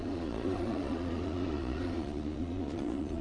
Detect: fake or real fake